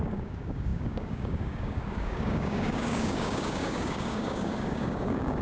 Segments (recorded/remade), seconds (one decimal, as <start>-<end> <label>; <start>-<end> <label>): 0.0-5.4 remade